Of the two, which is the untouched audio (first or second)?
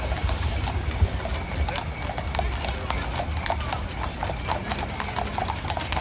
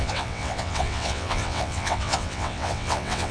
first